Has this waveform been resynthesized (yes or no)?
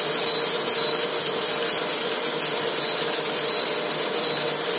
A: no